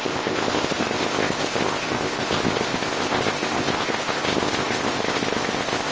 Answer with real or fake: fake